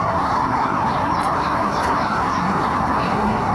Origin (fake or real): fake